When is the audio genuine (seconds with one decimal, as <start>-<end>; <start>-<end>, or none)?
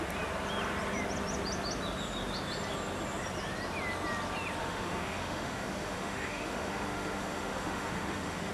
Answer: 0.0-4.6